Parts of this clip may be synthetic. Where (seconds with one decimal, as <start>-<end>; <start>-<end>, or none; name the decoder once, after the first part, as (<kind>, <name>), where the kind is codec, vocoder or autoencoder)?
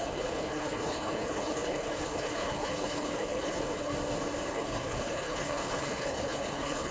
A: 0.0-3.9 (codec, HILCodec); 4.5-6.9